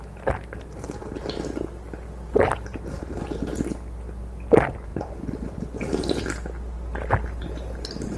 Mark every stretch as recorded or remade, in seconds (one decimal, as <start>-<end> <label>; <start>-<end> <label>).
0.0-4.9 recorded; 4.9-6.2 remade; 6.2-8.2 recorded